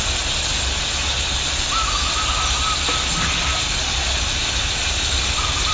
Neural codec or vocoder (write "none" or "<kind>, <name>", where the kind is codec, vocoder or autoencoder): none